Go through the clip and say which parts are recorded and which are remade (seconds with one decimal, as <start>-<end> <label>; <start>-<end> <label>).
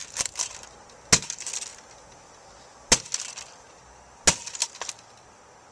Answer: 0.0-5.7 recorded